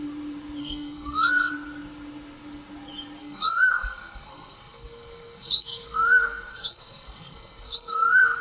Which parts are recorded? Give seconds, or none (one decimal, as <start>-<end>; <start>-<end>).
0.0-0.6; 1.5-3.2